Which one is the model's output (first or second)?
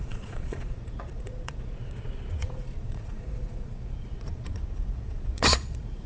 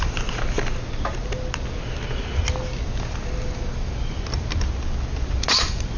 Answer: first